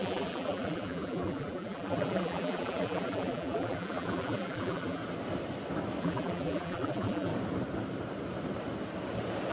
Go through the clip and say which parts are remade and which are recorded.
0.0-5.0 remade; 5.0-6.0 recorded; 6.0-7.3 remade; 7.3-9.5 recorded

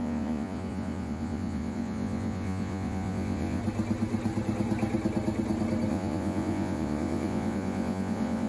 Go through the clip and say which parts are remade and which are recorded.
0.0-3.6 remade; 3.6-5.9 recorded; 5.9-8.5 remade

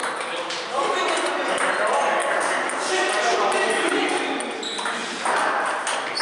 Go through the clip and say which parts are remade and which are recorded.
0.0-1.3 remade; 1.3-6.2 recorded

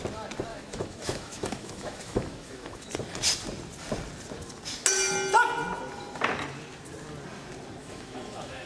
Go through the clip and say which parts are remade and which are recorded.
0.0-0.5 recorded; 0.5-2.9 remade; 2.9-7.8 recorded; 7.8-8.7 remade

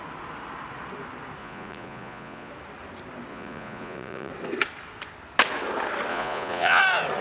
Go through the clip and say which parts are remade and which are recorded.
0.0-1.4 recorded; 1.4-2.5 remade; 2.5-3.3 recorded; 3.3-4.3 remade; 4.3-6.1 recorded; 6.1-6.8 remade; 6.8-7.2 recorded

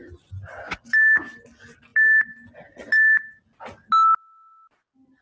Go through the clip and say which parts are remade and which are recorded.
0.0-5.2 recorded